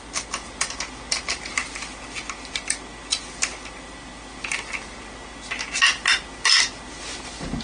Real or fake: real